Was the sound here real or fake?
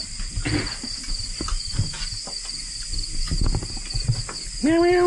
real